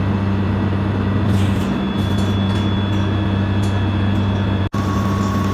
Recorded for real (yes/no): yes